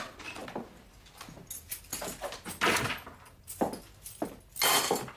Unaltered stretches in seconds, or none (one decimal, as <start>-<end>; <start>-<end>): 0.0-5.2